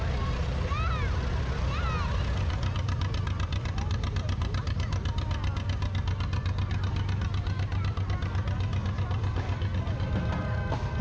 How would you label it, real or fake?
real